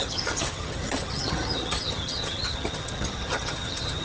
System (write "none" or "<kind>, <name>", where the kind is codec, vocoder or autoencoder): vocoder, HiFi-GAN